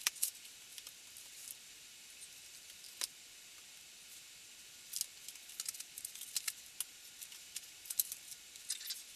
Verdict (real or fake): real